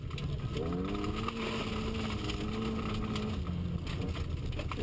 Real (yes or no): yes